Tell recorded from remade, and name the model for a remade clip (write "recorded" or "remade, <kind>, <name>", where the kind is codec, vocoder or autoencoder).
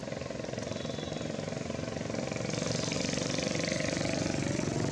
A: recorded